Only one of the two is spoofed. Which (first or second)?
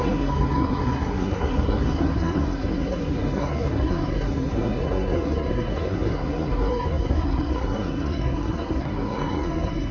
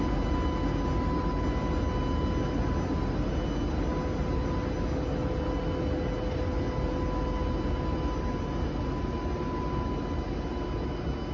first